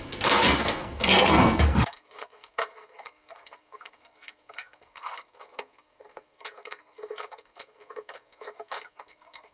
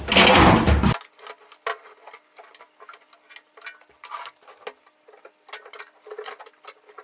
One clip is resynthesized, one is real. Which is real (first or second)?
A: second